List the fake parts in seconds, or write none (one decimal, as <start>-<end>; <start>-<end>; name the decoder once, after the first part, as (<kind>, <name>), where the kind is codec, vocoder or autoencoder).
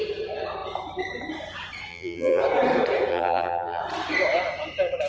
1.9-2.4 (vocoder, BigVGAN v2); 3.1-3.8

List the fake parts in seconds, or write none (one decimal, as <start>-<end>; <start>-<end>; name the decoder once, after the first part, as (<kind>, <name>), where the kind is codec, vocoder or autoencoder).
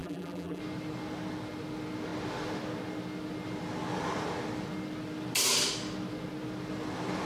0.0-0.6 (vocoder, BigVGAN v2)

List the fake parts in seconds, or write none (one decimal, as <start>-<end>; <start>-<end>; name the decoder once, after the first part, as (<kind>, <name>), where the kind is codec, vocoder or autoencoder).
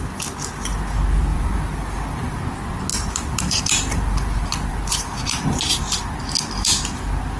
1.3-2.4 (vocoder, BigVGAN v2); 2.9-5.8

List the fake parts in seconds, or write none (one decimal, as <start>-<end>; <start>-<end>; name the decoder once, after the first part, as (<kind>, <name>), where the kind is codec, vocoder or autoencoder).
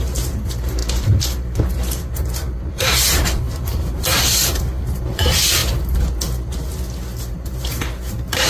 0.0-5.6 (vocoder, BigVGAN v2); 7.3-8.5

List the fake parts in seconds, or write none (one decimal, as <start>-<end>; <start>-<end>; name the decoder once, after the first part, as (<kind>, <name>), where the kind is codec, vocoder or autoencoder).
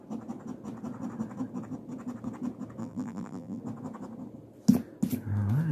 2.8-3.6 (vocoder, BigVGAN v2)